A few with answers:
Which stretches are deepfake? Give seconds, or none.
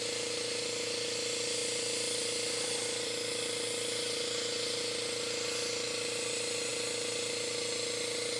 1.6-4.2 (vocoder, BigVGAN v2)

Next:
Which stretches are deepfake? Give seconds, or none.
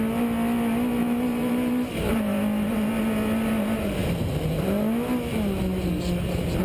1.0-2.2 (vocoder, BigVGAN v2); 4.0-4.7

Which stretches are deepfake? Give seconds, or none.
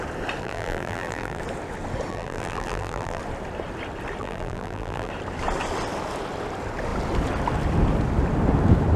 0.4-1.4 (vocoder, BigVGAN v2); 2.1-3.2; 4.2-5.1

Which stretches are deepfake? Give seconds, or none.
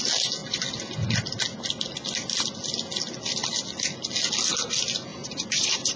5.1-6.0 (vocoder, BigVGAN v2)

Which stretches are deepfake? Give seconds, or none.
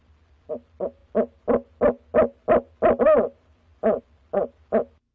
none